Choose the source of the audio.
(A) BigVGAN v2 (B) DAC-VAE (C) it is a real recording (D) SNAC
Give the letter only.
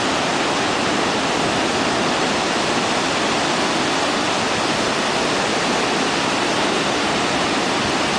C